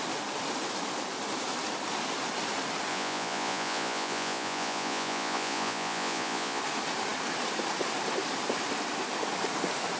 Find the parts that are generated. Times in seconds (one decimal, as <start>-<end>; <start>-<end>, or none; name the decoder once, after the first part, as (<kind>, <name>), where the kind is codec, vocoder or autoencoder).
2.9-6.6 (vocoder, Vocos)